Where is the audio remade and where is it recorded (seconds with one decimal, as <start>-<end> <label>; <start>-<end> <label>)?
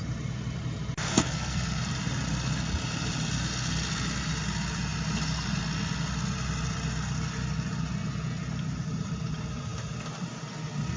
0.0-1.1 recorded; 1.1-1.8 remade; 1.8-11.0 recorded